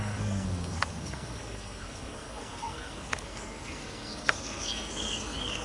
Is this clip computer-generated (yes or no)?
yes